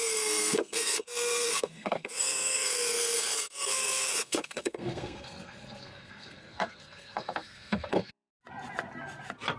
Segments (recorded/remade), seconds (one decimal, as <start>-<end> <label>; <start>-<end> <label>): 0.0-8.3 remade; 8.3-9.6 recorded